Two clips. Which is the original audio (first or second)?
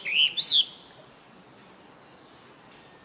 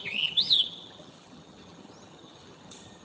first